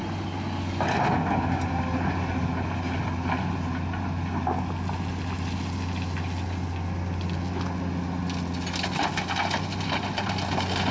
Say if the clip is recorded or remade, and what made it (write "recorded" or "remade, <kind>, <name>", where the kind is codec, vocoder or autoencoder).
recorded